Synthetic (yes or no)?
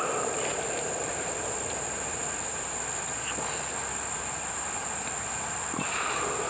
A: no